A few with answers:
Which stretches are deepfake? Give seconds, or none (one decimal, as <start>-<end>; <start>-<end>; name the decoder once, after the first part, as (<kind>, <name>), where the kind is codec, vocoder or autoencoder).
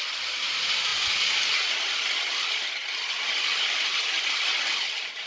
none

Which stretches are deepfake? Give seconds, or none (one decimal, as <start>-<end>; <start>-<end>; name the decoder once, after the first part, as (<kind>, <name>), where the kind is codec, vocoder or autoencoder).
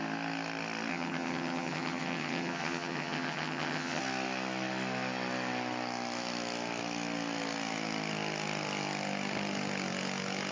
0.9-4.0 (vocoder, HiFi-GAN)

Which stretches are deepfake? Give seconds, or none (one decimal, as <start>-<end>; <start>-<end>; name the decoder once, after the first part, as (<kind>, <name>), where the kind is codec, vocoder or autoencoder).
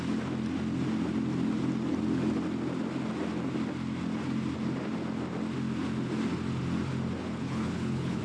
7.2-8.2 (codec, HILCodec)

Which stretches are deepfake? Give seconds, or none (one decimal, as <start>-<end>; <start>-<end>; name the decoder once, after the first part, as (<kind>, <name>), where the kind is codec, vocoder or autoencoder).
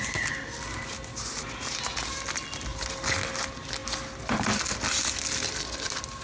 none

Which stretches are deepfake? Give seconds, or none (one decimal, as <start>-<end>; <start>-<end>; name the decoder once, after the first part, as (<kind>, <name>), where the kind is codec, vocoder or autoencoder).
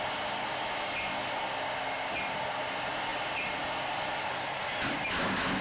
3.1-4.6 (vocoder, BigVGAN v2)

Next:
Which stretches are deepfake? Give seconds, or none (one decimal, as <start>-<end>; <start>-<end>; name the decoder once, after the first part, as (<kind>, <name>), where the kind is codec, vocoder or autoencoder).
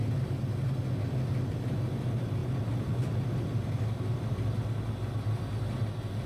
2.4-4.6 (vocoder, BigVGAN v2)